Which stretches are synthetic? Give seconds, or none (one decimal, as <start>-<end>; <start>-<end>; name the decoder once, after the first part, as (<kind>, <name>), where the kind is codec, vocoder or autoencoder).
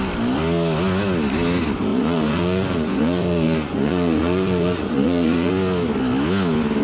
1.9-5.5 (vocoder, Vocos)